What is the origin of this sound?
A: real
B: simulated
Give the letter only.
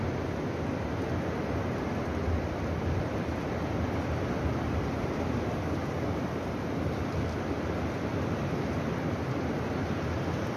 A